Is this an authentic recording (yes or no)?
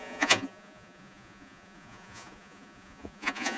no